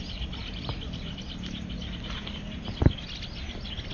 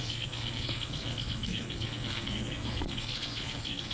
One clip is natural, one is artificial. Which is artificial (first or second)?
second